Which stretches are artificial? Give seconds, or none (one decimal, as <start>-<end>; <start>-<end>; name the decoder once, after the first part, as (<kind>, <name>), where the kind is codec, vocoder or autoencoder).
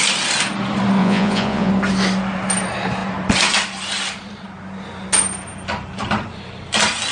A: 1.0-1.7 (vocoder, Vocos)